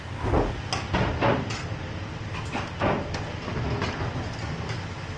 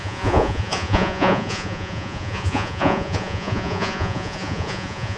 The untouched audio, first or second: first